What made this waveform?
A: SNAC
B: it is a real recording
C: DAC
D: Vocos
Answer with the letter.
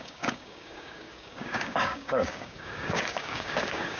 C